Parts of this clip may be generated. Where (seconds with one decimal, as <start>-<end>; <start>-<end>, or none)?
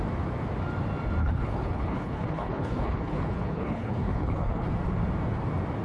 1.2-4.7